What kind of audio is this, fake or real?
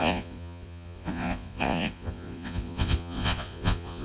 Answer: fake